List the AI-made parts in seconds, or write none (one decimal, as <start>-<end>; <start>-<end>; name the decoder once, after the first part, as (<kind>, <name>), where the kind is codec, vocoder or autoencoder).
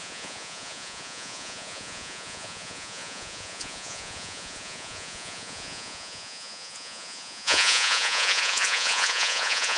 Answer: 0.0-9.8 (vocoder, Vocos)